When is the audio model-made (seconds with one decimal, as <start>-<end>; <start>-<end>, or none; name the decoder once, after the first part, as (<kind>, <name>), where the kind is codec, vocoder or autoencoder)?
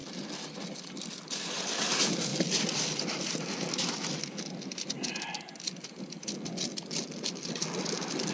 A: none